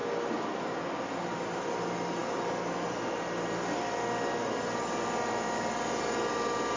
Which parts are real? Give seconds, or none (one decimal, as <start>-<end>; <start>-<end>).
0.0-6.8